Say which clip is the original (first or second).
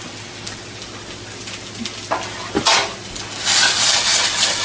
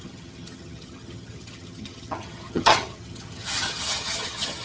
first